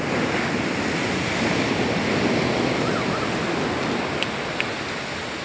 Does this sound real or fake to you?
real